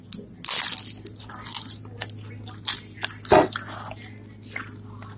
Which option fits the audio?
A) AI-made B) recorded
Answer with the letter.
B